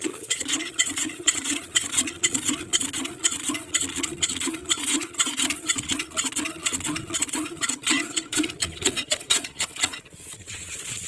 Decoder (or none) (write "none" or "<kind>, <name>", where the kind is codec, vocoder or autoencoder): vocoder, Vocos